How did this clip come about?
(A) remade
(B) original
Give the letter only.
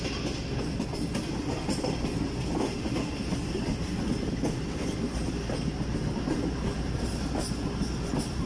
B